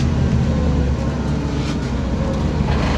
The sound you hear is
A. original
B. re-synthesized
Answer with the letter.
A